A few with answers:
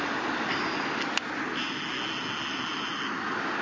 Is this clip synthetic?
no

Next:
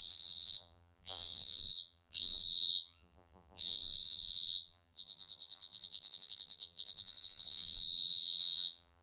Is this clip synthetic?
yes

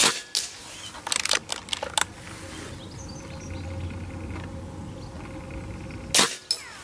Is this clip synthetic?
no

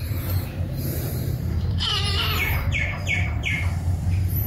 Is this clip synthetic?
yes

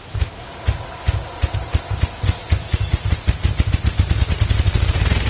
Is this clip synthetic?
no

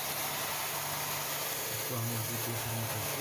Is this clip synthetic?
no